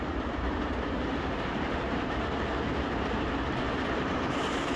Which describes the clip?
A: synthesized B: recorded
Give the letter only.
A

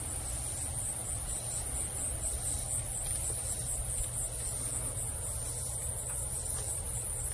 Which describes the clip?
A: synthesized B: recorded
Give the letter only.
B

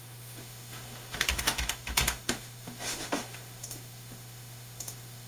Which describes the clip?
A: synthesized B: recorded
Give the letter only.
A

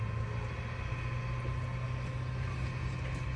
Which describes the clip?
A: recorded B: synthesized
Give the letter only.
A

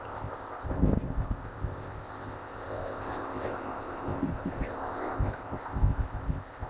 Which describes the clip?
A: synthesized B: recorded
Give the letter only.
A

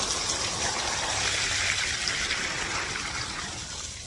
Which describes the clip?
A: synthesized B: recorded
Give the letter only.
B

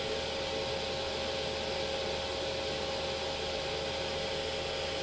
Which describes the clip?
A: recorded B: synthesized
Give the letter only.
A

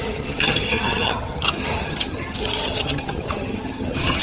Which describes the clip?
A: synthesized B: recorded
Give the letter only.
A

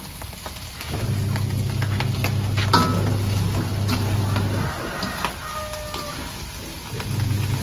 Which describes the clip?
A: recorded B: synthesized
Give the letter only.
A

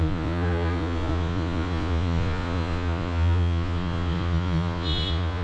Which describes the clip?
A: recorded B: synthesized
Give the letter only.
B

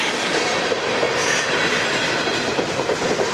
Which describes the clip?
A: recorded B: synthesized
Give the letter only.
B